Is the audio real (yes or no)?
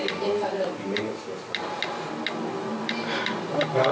yes